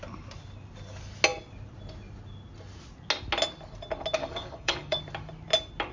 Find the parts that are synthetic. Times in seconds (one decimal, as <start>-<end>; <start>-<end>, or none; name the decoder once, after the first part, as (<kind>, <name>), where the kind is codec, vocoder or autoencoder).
4.2-5.0 (codec, DAC)